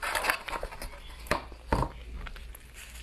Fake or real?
real